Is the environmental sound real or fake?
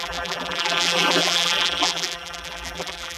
fake